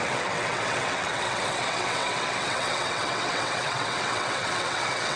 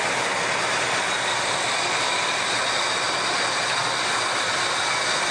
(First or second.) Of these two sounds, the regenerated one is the first